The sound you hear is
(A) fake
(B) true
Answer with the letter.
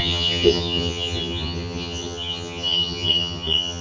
A